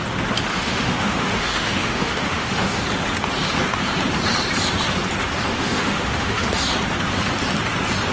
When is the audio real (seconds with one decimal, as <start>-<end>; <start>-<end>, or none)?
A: 0.0-0.5; 2.8-5.5; 6.5-8.1